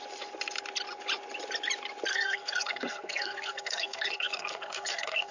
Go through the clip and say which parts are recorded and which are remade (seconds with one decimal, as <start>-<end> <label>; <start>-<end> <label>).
0.0-2.1 recorded; 2.1-5.3 remade